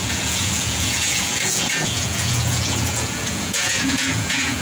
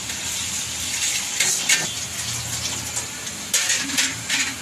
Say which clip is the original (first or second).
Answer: second